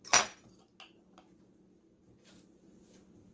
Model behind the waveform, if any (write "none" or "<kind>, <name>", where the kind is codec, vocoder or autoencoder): none